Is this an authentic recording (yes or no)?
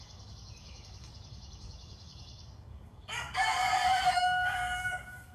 no